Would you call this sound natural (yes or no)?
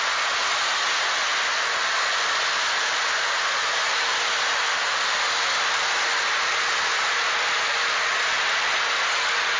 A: yes